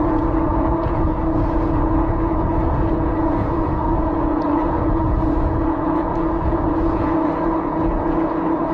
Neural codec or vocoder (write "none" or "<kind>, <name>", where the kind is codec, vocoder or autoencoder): vocoder, Vocos